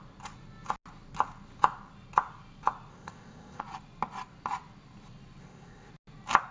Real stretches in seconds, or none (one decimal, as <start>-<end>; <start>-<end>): 0.0-2.9; 3.6-5.4; 5.9-6.5